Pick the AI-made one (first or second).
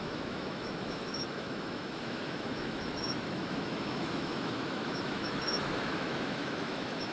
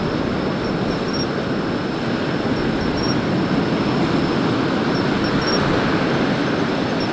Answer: first